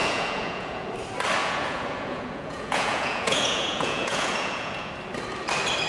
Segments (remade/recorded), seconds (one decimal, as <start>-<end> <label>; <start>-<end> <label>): 0.0-0.9 remade; 0.9-1.4 recorded; 1.4-4.9 remade; 4.9-5.9 recorded